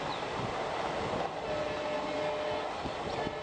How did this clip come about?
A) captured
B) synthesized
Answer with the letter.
A